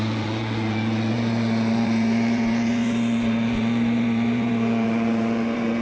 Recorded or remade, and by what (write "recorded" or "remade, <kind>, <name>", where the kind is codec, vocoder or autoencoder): remade, vocoder, Vocos